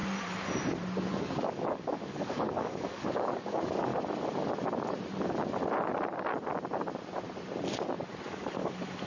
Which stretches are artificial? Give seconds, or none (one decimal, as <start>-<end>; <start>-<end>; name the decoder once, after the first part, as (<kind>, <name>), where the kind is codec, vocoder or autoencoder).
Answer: 1.2-3.9 (codec, DAC); 8.3-9.1